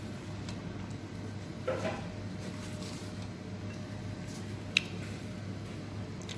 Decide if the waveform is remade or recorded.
recorded